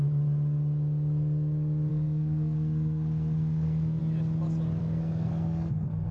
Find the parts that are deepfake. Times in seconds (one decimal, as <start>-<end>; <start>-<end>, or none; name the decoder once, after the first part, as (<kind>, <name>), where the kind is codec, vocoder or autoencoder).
1.9-4.0 (codec, SNAC); 4.8-6.1